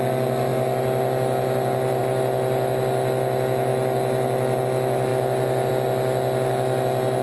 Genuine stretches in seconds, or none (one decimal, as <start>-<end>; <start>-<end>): 0.0-7.2

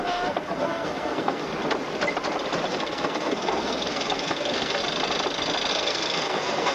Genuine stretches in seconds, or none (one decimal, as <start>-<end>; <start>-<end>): 1.5-2.7; 4.8-5.7

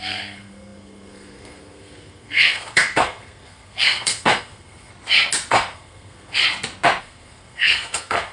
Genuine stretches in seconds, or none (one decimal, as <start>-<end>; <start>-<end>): 4.9-5.5; 6.4-7.0